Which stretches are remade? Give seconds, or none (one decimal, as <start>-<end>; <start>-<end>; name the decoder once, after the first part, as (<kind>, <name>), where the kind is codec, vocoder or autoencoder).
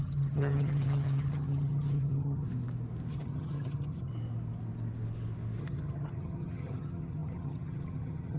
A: 0.0-2.5 (vocoder, HiFi-GAN); 3.1-4.1; 5.6-8.4